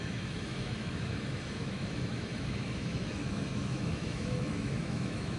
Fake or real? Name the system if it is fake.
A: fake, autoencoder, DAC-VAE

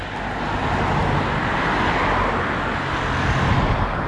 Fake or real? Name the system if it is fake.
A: real